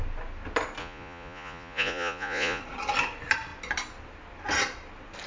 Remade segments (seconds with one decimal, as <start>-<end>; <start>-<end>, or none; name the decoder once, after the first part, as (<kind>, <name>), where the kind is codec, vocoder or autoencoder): 0.8-2.6 (vocoder, Vocos)